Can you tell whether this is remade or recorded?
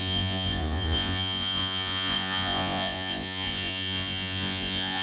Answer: remade